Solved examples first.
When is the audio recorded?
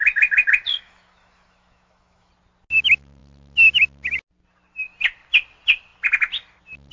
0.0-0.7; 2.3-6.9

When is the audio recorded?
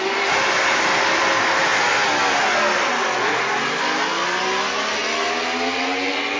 0.0-6.4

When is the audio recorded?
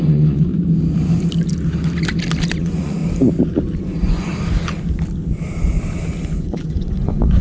0.5-2.6; 3.0-3.8; 4.3-6.2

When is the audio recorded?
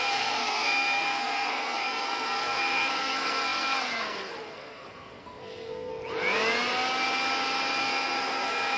5.9-7.8